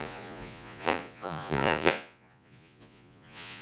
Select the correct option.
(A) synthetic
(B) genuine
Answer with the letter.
A